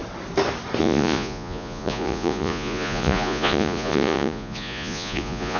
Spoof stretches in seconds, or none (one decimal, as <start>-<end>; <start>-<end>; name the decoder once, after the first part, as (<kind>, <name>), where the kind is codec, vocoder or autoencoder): 0.8-5.6 (vocoder, Vocos)